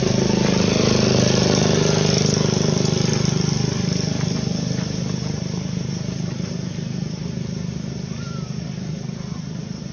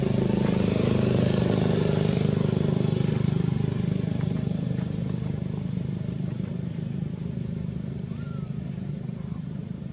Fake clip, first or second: second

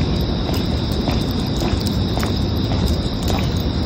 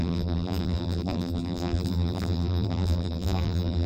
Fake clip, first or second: second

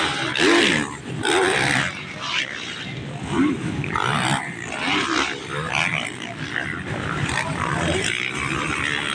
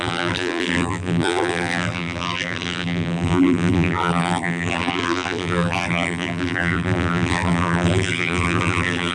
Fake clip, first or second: second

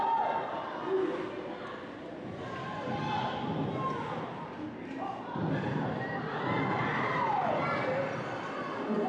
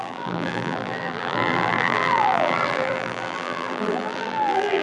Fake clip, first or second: second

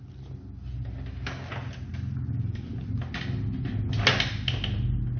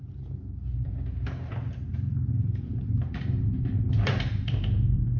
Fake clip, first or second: second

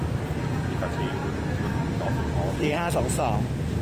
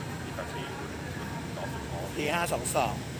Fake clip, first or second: second